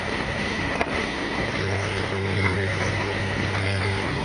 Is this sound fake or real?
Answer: fake